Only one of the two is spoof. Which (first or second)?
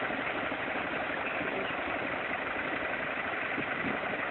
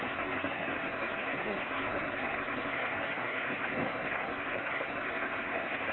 second